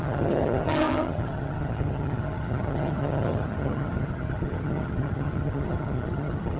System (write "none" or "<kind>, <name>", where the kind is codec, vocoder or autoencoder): vocoder, HiFi-GAN